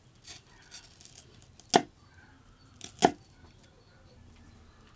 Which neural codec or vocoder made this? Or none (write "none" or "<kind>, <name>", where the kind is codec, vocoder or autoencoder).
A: none